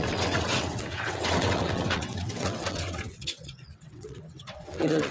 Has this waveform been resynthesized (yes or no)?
yes